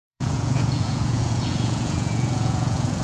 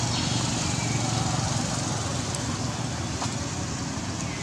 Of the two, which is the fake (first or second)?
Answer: first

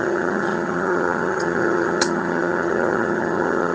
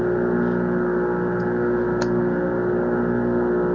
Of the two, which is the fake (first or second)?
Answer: first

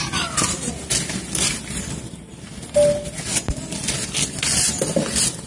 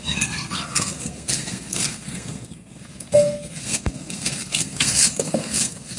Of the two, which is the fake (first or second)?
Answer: second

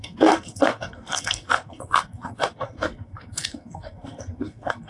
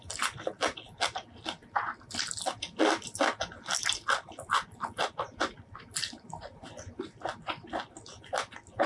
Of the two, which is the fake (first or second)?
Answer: first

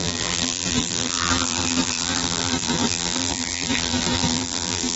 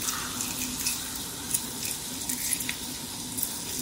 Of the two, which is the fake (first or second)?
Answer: first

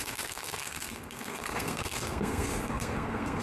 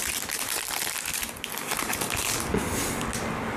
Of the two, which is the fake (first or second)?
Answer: first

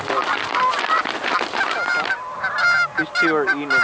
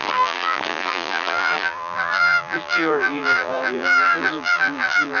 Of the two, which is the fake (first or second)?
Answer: second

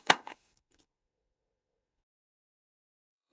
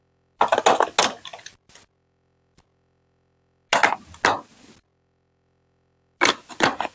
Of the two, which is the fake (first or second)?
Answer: first